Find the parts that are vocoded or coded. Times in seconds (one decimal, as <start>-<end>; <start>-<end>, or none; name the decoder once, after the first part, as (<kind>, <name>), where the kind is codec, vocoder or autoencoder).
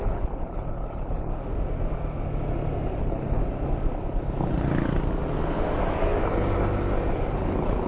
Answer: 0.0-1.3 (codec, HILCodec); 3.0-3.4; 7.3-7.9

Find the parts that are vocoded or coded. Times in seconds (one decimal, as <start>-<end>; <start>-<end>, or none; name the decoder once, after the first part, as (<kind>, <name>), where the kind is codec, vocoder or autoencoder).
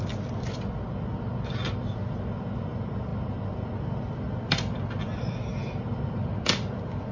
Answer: none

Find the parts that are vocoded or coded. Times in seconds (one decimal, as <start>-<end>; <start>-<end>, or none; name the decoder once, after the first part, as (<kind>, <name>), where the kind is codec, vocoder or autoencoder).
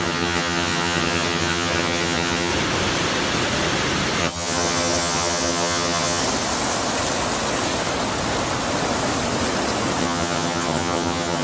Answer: 0.0-2.5 (vocoder, HiFi-GAN); 4.2-6.2; 10.0-11.4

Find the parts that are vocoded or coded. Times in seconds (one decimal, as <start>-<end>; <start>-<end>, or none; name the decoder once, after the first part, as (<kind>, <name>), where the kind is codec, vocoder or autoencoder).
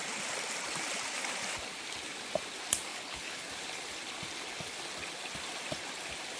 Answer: 2.9-3.4 (codec, HILCodec)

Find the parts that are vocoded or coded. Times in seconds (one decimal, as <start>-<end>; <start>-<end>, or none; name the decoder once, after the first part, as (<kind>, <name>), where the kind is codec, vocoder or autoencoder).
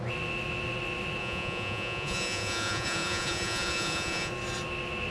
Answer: 1.2-4.3 (vocoder, Vocos)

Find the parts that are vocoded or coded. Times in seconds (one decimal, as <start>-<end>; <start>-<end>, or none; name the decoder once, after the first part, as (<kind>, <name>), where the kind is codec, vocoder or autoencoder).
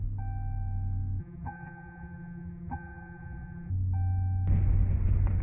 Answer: 1.2-3.7 (vocoder, BigVGAN v2)